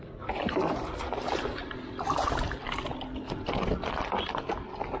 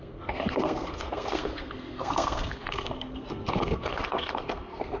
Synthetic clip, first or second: second